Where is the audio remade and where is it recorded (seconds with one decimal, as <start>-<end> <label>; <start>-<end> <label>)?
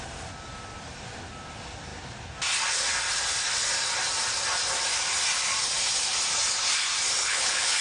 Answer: 0.0-7.2 recorded; 7.2-7.8 remade